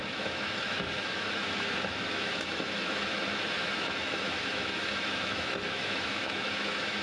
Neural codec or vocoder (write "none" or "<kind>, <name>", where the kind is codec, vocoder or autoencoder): autoencoder, DAC-VAE